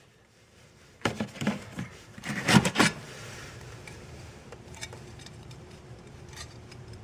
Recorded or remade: remade